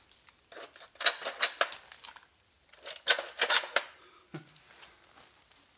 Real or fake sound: real